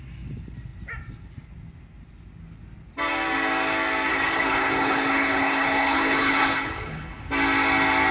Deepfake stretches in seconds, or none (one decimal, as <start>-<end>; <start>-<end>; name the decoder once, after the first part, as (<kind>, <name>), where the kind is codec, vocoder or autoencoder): 4.1-7.2 (codec, HILCodec)